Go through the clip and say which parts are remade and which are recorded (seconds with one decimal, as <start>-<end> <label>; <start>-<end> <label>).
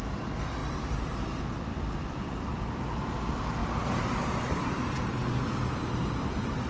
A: 0.0-0.6 recorded; 0.6-1.1 remade; 1.1-1.7 recorded; 1.7-2.9 remade; 2.9-5.2 recorded; 5.2-6.0 remade; 6.0-6.7 recorded